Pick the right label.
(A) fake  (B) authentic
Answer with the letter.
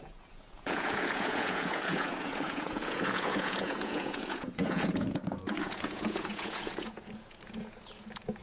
A